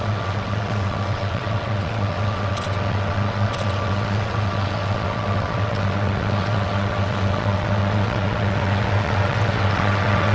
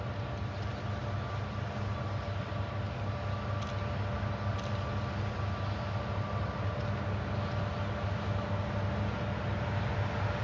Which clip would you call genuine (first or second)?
second